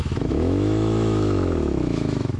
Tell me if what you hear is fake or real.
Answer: fake